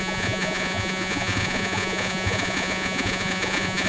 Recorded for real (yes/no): no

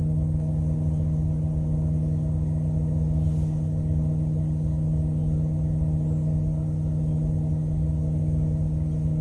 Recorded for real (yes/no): yes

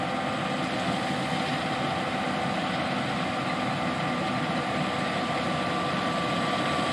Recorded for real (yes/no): yes